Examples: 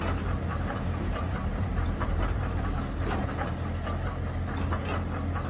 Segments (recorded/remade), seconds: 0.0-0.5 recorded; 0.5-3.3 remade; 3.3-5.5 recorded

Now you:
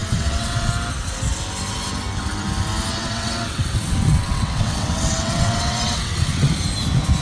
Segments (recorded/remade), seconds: 0.0-0.7 remade; 0.7-2.9 recorded; 2.9-6.5 remade; 6.5-7.2 recorded

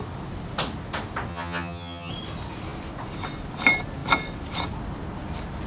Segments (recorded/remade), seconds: 0.0-1.3 recorded; 1.3-2.1 remade; 2.1-5.7 recorded

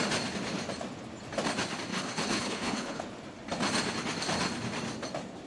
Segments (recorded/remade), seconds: 0.0-1.9 recorded; 1.9-3.0 remade; 3.0-5.5 recorded

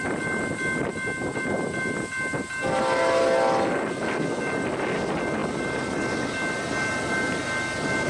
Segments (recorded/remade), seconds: 0.0-8.1 recorded